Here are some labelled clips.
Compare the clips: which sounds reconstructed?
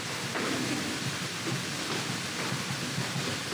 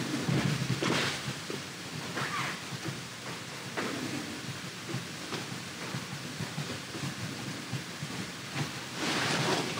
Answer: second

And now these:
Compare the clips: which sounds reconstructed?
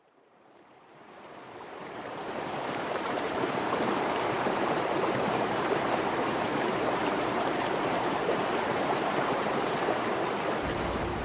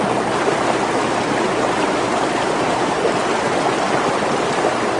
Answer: first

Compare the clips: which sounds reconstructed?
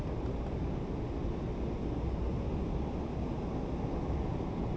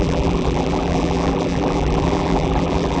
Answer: second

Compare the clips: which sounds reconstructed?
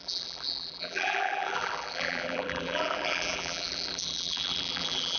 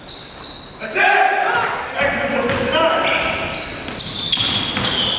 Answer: first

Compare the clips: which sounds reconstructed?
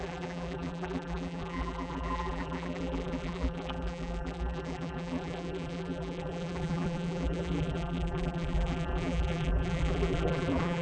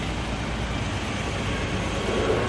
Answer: first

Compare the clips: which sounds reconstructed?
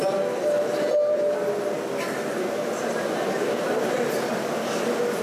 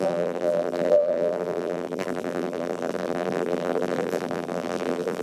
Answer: second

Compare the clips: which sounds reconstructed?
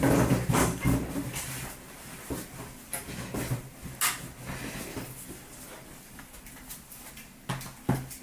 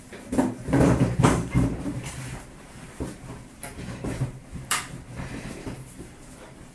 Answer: second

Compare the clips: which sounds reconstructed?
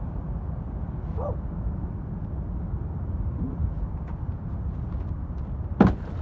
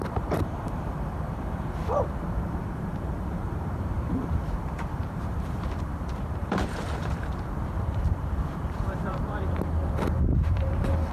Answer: second